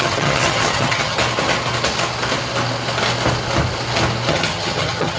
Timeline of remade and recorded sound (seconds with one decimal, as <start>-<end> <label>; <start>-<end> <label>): 0.0-1.2 remade; 1.2-4.3 recorded; 4.3-5.2 remade